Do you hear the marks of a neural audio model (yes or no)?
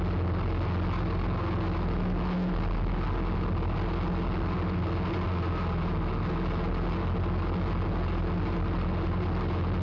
no